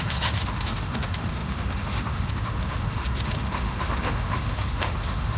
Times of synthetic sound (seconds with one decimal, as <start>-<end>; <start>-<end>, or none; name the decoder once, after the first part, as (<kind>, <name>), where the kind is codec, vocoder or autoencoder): 0.0-5.4 (autoencoder, DAC-VAE)